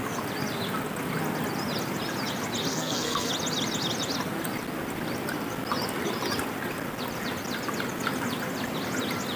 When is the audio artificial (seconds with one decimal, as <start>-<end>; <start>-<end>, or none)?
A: 2.7-3.3